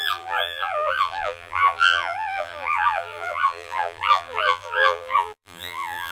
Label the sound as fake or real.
fake